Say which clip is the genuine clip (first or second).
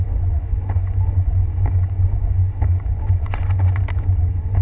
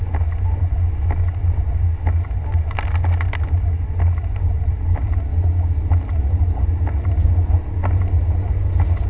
second